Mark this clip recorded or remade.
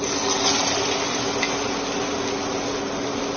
recorded